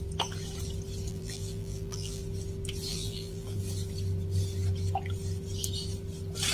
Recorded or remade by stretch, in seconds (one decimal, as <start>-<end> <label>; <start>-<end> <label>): 0.0-1.1 recorded; 1.1-2.2 remade; 2.2-2.9 recorded; 2.9-3.6 remade; 3.6-6.5 recorded